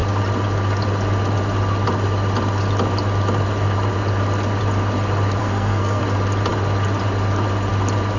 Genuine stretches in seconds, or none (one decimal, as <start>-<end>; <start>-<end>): 0.0-5.4; 6.0-8.2